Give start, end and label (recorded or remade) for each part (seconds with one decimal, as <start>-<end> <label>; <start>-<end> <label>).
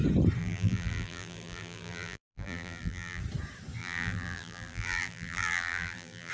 0.0-0.4 recorded; 0.4-3.2 remade; 3.2-3.8 recorded; 3.8-6.3 remade